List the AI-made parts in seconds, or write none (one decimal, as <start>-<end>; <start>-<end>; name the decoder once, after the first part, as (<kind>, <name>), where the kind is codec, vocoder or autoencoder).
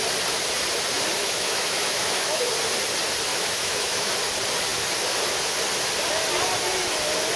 1.2-2.5 (autoencoder, DAC-VAE); 3.3-4.1